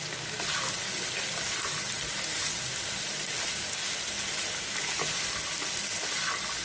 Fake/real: real